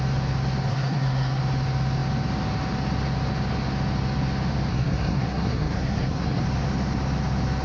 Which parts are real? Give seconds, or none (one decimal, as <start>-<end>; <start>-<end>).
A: 0.0-0.7; 1.4-4.7; 6.4-7.6